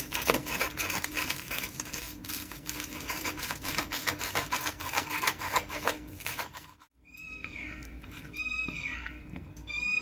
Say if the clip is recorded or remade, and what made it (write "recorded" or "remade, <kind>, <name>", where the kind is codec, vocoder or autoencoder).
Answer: remade, codec, SNAC